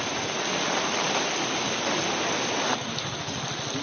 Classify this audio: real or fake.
real